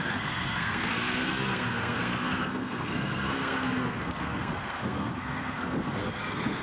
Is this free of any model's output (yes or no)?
no